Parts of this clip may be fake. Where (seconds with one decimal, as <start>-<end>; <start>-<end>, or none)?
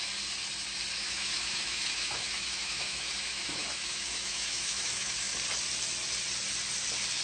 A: 1.0-5.3